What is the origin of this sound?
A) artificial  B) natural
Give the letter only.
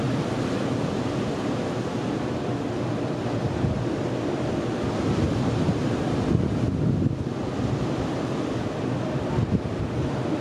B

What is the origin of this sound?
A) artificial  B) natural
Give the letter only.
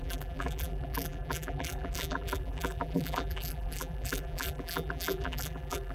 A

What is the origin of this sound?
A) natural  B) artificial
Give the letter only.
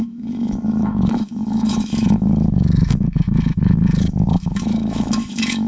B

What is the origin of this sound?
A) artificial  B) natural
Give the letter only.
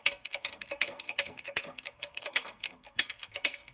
A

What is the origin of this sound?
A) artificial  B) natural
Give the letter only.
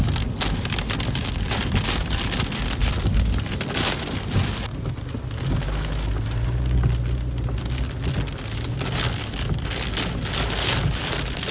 B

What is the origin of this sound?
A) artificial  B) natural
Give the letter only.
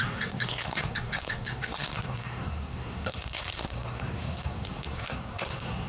A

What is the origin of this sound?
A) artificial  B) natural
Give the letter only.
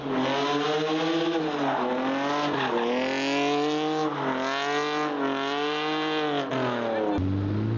B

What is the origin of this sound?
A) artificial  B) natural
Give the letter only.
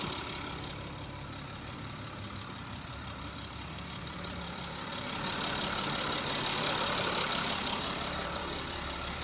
A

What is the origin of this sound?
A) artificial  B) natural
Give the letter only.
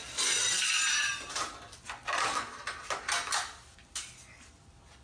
B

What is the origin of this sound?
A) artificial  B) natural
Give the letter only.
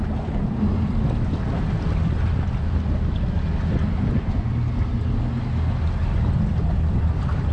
B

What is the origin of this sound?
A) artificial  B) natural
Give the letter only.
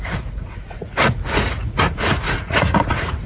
A